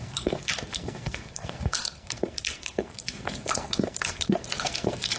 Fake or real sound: fake